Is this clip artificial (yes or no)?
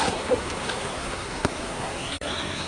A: yes